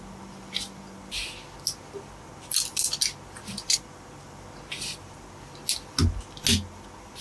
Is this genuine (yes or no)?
yes